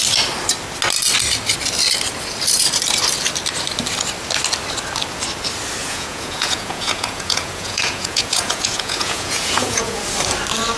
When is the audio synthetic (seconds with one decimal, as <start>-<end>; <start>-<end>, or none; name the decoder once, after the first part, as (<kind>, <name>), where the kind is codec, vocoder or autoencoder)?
5.8-10.0 (vocoder, Vocos)